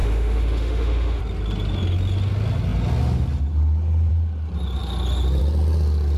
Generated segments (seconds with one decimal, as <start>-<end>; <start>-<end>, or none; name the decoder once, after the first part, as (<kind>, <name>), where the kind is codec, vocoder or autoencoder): 0.0-1.2 (autoencoder, DAC-VAE)